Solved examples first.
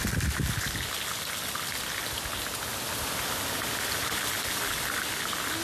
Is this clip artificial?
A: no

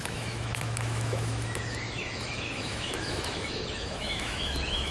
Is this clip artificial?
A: yes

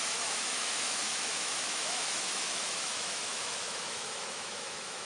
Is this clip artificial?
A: yes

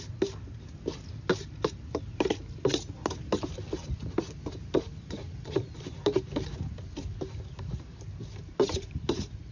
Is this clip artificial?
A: no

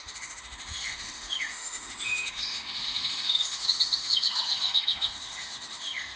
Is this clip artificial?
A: yes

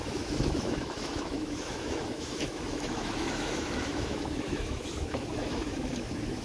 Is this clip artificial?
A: yes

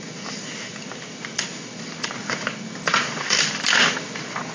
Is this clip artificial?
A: no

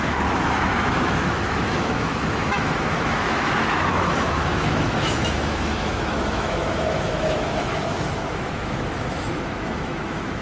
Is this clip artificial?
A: yes